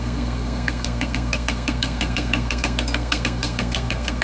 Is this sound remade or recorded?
remade